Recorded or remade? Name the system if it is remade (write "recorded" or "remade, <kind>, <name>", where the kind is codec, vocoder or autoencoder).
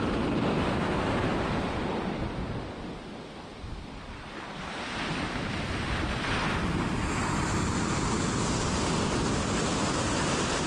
recorded